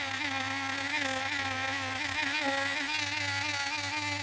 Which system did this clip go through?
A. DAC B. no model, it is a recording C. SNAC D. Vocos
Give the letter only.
B